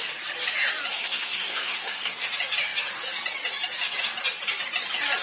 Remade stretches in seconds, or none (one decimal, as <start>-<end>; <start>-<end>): 0.9-2.3